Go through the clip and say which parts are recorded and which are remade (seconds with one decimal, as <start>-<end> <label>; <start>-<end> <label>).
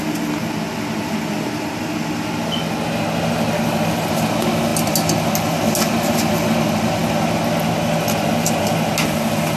0.0-9.6 recorded